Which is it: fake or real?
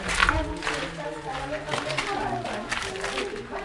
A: real